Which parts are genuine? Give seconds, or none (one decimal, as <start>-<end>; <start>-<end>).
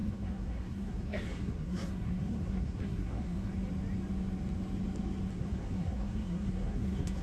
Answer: 3.5-5.3